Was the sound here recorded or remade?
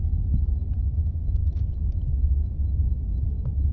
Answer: recorded